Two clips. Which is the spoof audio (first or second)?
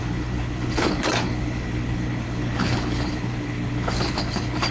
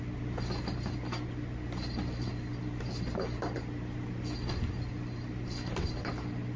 first